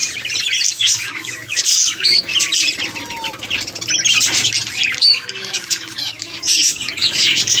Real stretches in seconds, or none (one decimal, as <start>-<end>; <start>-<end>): 0.0-0.7; 2.3-5.0